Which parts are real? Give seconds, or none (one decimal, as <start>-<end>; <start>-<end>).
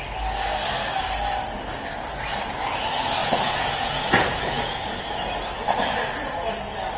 0.0-3.2; 5.0-7.0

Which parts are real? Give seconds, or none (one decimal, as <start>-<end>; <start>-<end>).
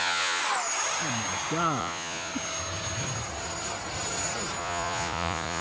0.4-1.8; 2.3-4.6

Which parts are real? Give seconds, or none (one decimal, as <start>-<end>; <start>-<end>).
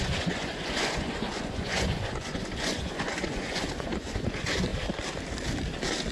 4.7-6.1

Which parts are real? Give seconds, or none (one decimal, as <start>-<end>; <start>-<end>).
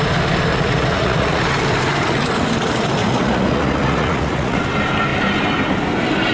0.0-0.5; 1.4-3.0; 4.6-6.3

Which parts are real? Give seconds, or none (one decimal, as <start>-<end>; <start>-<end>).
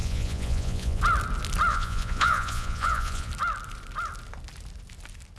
1.0-1.7; 3.3-5.4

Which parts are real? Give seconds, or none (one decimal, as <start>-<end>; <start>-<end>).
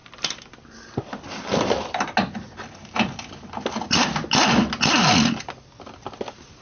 0.0-6.6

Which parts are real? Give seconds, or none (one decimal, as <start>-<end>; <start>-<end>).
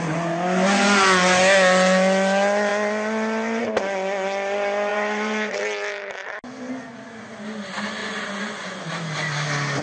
0.0-4.9; 5.6-8.0; 8.9-9.8